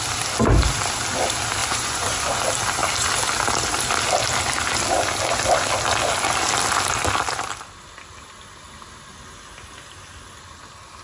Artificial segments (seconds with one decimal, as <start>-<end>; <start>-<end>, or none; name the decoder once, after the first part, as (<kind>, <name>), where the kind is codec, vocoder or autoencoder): 1.6-2.4 (vocoder, Vocos)